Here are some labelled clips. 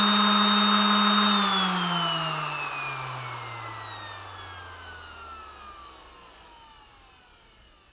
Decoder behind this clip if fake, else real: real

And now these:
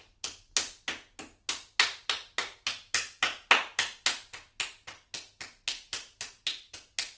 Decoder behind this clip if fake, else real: real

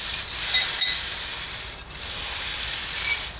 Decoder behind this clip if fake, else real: real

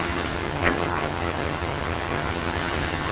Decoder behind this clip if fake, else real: fake, vocoder, HiFi-GAN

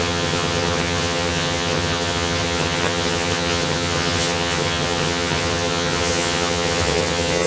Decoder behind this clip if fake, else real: fake, vocoder, HiFi-GAN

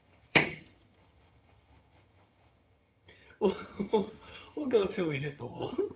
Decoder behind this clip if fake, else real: fake, vocoder, HiFi-GAN